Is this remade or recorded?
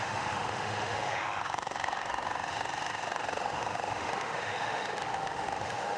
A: remade